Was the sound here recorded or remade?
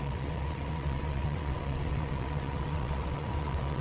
remade